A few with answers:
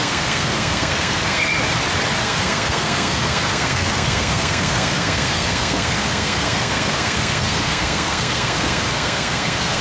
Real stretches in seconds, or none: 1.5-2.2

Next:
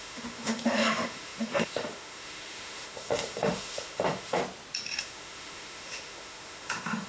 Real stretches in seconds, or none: 4.4-5.0